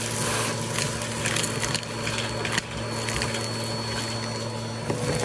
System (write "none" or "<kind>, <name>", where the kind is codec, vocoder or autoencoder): none